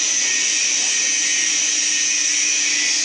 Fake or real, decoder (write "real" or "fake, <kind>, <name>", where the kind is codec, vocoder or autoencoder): real